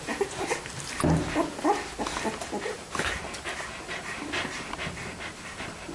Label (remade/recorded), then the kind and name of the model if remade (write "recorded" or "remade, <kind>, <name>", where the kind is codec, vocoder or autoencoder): recorded